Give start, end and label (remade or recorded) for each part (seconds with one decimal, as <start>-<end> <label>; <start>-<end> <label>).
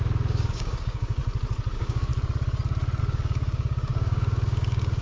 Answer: 0.0-1.2 remade; 1.2-1.7 recorded; 1.7-2.1 remade; 2.1-3.0 recorded; 3.0-5.0 remade